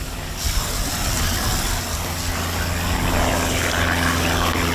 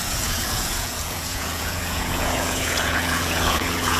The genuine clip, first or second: first